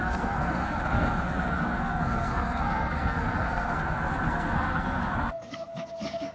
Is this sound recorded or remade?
remade